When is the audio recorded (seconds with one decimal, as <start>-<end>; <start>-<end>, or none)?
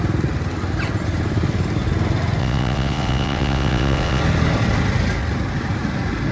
0.0-2.4; 4.2-6.3